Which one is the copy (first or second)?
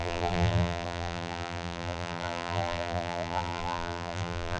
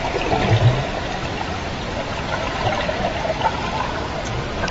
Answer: first